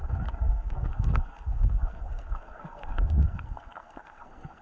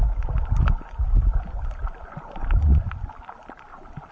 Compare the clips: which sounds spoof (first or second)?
first